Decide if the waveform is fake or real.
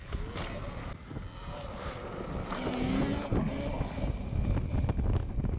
real